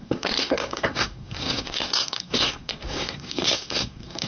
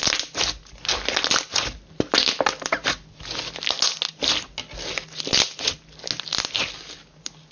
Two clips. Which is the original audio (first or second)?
second